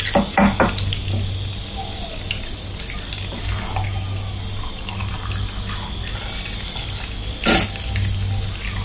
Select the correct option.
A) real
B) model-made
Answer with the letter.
A